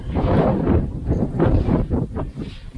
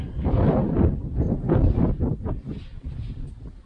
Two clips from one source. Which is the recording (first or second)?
second